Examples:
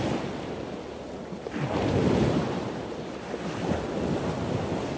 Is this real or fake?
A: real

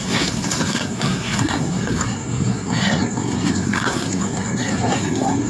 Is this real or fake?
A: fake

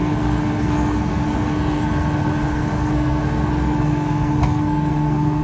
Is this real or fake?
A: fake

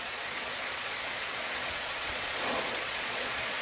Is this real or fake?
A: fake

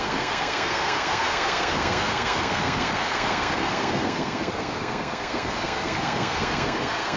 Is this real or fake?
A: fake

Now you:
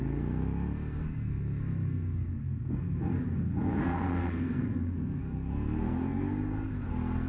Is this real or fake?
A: fake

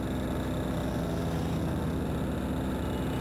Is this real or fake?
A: real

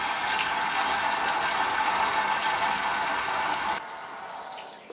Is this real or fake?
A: real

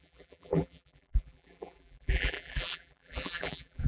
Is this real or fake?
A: fake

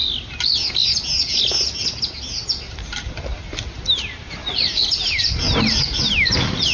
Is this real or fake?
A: real